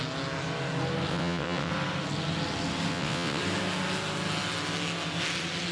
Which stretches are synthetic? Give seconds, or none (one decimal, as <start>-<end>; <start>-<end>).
1.1-1.7; 2.9-3.4

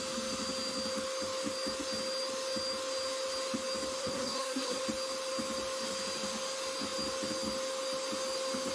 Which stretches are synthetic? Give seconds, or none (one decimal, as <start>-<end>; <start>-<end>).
4.0-4.8

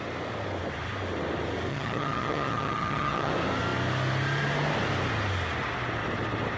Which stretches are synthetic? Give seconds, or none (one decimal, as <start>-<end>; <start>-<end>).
1.7-3.3